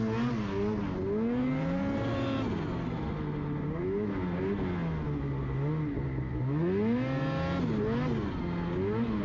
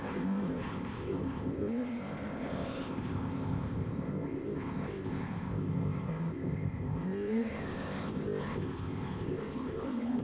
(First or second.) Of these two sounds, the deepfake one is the second